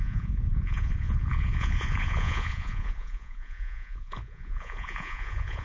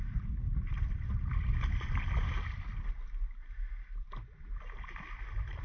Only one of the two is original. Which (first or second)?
second